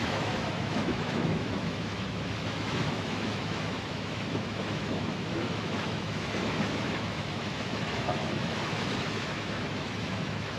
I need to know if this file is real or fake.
fake